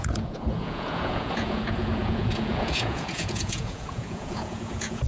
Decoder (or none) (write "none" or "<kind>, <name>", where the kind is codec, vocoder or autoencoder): vocoder, Vocos